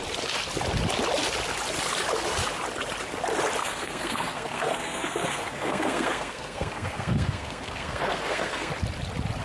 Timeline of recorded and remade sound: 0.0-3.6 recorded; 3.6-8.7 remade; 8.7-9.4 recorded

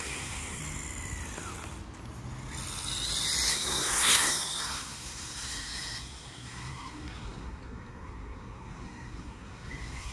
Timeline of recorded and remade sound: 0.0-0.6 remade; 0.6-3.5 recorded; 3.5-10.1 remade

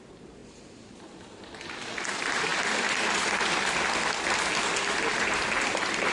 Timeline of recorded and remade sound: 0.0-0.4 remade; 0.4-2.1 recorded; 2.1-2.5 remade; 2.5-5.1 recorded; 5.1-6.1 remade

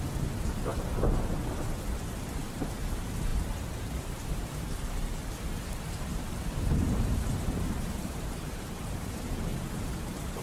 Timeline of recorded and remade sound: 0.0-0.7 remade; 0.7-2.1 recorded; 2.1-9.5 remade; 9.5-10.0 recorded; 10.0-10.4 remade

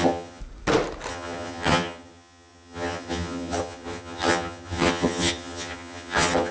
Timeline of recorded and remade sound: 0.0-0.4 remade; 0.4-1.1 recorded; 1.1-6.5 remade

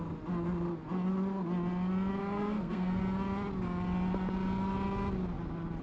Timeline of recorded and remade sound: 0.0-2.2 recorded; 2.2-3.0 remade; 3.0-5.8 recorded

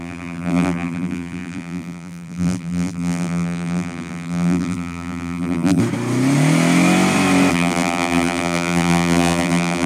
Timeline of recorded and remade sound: 0.0-5.8 remade; 5.8-7.5 recorded; 7.5-9.9 remade

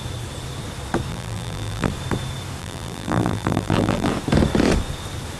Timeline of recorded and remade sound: 0.0-1.1 recorded; 1.1-1.9 remade; 1.9-2.6 recorded; 2.6-4.1 remade; 4.1-5.4 recorded